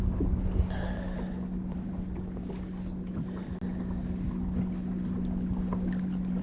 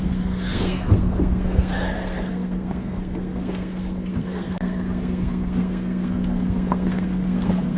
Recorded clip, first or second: first